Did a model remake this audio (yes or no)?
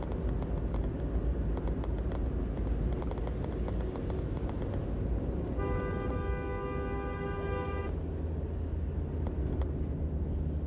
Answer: no